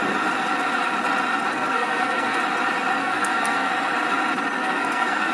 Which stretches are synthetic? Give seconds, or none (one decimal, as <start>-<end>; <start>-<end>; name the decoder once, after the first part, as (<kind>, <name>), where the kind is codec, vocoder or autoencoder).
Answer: 1.3-2.4 (codec, SNAC); 3.0-3.7; 4.6-5.3